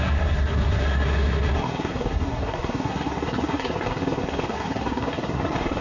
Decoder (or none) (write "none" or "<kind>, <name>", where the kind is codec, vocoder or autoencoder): codec, SNAC